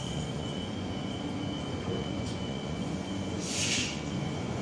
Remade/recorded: remade